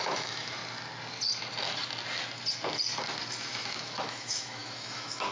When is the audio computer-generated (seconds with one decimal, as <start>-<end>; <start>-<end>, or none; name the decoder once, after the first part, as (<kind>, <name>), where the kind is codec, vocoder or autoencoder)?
0.0-0.6 (autoencoder, DAC-VAE); 3.5-5.3